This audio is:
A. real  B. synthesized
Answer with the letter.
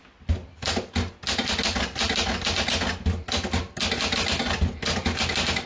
A